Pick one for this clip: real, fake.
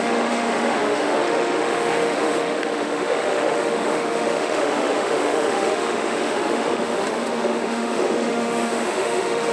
fake